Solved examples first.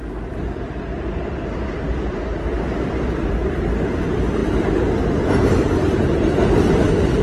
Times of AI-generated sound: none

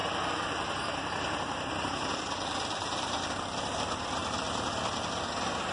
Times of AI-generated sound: 0.0-3.3; 4.2-4.7

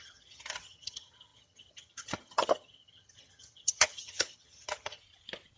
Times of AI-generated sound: 0.0-5.0

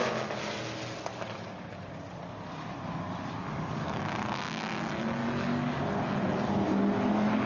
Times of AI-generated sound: 3.4-4.0; 5.2-5.8

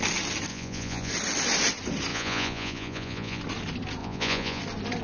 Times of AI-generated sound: 0.5-1.1; 2.1-3.4; 4.0-4.6

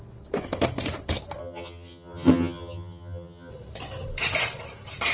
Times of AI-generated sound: 1.4-3.5